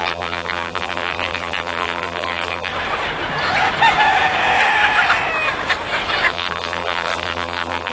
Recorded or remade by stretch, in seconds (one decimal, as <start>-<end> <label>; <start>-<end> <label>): 0.0-2.7 remade; 2.7-6.3 recorded; 6.3-7.9 remade

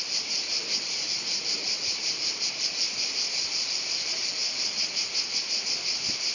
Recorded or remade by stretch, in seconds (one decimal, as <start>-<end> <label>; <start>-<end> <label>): 0.0-4.4 remade; 4.4-5.5 recorded; 5.5-6.3 remade

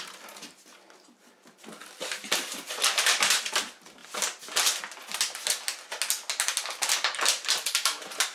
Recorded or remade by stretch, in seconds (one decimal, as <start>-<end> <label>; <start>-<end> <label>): 0.0-1.8 recorded; 1.8-3.4 remade; 3.4-4.0 recorded; 4.0-4.8 remade; 4.8-8.3 recorded

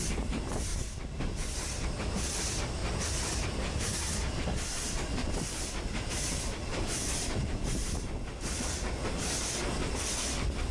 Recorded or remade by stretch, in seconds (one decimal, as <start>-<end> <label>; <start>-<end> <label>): 0.0-0.7 remade; 0.7-1.9 recorded; 1.9-2.8 remade; 2.8-4.3 recorded; 4.3-10.7 remade

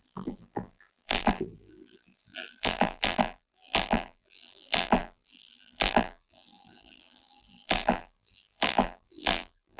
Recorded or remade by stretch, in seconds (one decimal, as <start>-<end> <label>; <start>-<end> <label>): 0.0-9.8 remade

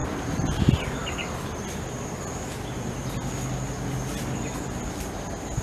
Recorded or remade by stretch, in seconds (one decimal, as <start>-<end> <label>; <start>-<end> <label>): 0.0-0.6 remade; 0.6-5.6 recorded